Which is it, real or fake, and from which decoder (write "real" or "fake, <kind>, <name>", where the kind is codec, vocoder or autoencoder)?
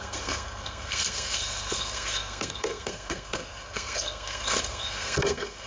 fake, codec, SNAC